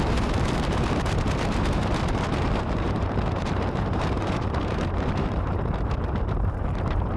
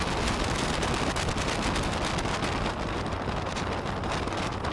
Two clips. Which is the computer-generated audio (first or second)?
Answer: first